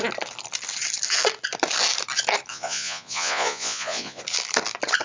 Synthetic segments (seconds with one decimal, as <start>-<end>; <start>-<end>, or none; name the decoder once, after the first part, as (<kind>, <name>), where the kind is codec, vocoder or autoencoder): 2.5-4.2 (vocoder, Vocos)